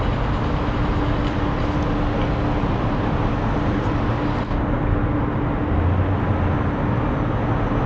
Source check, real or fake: real